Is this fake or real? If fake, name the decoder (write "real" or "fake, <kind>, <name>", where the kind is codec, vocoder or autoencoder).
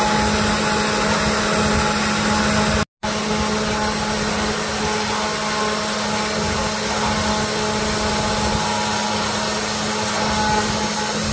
real